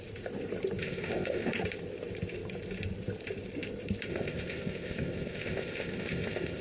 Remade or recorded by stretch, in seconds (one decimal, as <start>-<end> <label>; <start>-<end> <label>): 0.0-0.8 recorded; 0.8-1.5 remade; 1.5-4.1 recorded; 4.1-6.6 remade